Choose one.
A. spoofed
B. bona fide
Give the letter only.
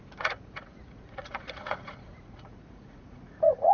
A